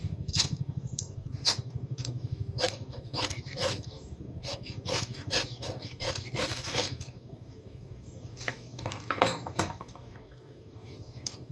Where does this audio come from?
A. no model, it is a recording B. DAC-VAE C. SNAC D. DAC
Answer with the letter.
D